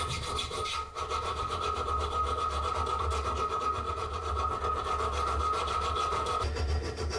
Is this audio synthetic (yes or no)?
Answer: no